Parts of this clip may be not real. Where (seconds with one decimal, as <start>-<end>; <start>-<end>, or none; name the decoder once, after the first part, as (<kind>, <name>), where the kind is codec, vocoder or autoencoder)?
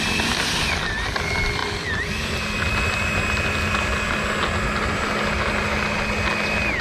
none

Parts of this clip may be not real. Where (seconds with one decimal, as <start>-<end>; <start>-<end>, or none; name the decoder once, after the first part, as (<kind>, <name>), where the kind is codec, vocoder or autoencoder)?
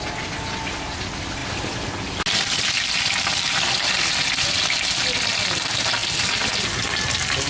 none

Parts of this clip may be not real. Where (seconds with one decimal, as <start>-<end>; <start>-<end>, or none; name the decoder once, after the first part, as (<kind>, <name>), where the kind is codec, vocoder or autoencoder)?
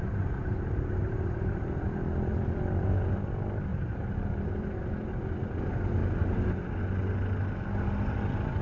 1.0-1.8 (vocoder, BigVGAN v2); 3.7-5.1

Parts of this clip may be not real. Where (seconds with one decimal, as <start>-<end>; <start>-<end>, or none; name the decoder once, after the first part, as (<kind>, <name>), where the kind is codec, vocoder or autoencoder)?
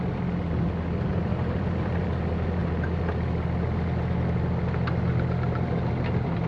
1.1-2.1 (vocoder, BigVGAN v2)